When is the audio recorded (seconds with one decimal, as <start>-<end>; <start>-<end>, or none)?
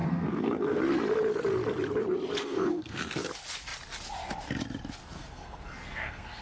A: 0.8-2.4; 3.3-5.0